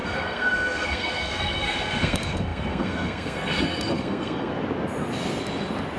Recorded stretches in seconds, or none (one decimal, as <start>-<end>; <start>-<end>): 4.5-6.0